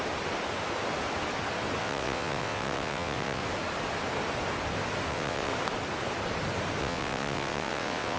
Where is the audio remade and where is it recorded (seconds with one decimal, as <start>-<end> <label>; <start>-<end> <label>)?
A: 0.0-1.8 recorded; 1.8-3.4 remade; 3.4-5.1 recorded; 5.1-5.5 remade; 5.5-6.8 recorded; 6.8-8.2 remade